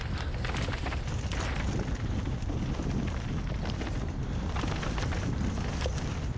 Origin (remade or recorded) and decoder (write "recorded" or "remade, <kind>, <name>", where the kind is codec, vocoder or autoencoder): recorded